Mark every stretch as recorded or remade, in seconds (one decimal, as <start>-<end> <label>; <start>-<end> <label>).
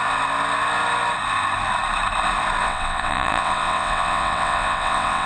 0.0-2.6 recorded; 2.6-5.3 remade